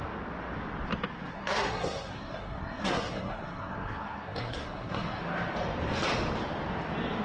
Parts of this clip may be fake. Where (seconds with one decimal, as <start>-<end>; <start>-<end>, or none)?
1.3-5.2